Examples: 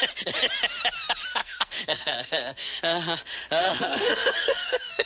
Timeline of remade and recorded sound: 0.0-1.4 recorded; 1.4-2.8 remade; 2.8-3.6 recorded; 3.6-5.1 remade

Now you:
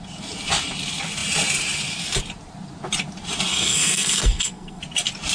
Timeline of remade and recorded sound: 0.0-3.5 recorded; 3.5-4.8 remade; 4.8-5.3 recorded

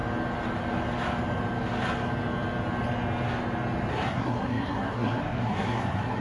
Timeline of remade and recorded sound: 0.0-3.9 recorded; 3.9-6.2 remade

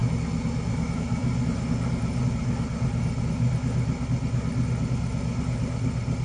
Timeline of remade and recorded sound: 0.0-6.2 recorded

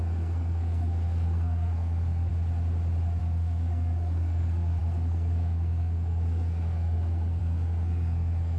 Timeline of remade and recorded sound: 0.0-2.3 remade; 2.3-3.2 recorded; 3.2-8.6 remade

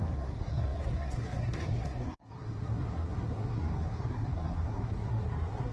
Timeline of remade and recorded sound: 0.0-5.7 remade

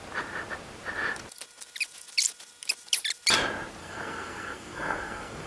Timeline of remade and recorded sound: 0.0-3.8 recorded; 3.8-5.5 remade